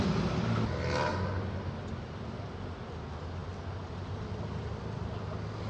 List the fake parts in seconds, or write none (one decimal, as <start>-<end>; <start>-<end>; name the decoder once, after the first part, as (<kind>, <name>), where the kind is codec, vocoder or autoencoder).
none